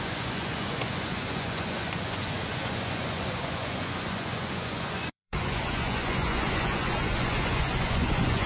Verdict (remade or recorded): remade